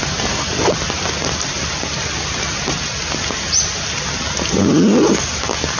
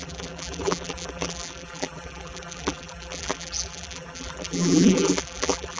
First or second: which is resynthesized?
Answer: second